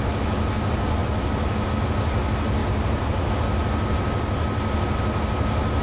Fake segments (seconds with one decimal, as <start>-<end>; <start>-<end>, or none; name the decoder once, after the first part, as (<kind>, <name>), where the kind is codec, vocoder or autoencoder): 2.6-3.3 (vocoder, BigVGAN v2)